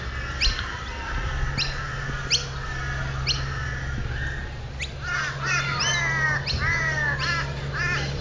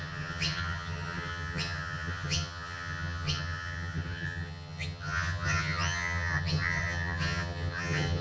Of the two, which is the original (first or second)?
first